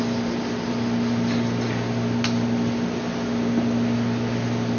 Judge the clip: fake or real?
real